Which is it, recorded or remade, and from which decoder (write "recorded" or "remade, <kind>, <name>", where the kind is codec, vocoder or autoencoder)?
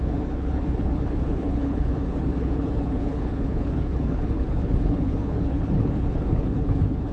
remade, codec, HILCodec